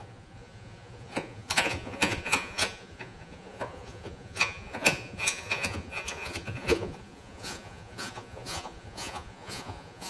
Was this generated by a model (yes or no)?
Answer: yes